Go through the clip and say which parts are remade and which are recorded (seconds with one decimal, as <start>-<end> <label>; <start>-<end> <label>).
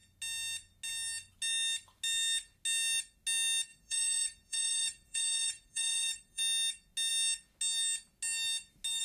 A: 0.0-3.7 recorded; 3.7-6.4 remade; 6.4-9.0 recorded